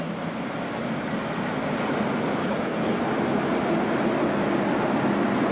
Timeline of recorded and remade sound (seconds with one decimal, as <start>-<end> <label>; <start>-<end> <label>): 0.0-2.4 recorded; 2.4-3.0 remade; 3.0-5.5 recorded